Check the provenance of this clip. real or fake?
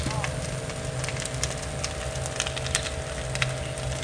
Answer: real